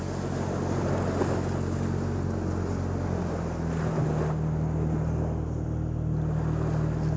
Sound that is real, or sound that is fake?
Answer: real